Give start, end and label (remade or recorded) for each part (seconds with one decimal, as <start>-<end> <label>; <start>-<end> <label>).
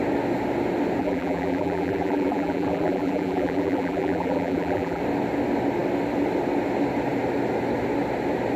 0.0-1.0 recorded; 1.0-5.0 remade; 5.0-8.6 recorded